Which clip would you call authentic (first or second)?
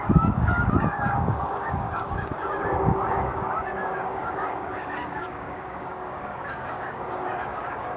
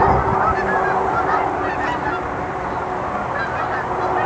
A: second